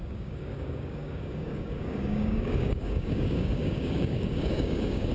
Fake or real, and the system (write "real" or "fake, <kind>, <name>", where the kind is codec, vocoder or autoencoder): fake, codec, DAC